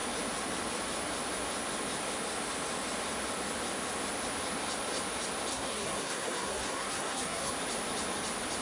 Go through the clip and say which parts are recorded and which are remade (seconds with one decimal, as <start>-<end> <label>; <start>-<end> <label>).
0.0-5.5 recorded; 5.5-7.5 remade; 7.5-8.6 recorded